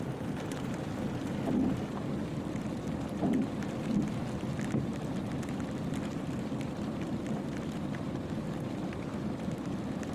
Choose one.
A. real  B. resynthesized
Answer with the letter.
A